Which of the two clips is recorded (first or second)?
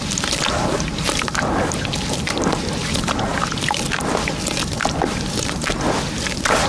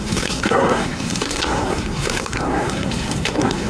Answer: first